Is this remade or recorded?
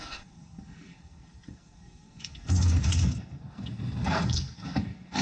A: remade